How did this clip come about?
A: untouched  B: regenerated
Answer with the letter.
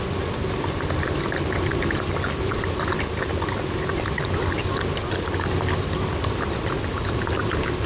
B